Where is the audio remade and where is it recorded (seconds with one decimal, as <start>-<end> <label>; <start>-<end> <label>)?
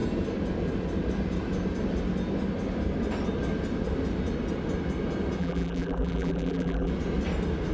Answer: 0.0-5.4 recorded; 5.4-6.9 remade; 6.9-7.7 recorded